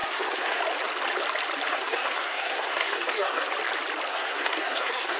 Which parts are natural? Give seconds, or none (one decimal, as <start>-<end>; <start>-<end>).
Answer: 0.6-1.7; 3.5-4.1